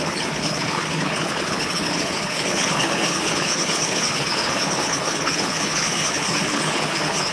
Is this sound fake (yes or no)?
yes